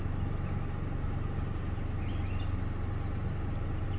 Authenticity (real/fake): real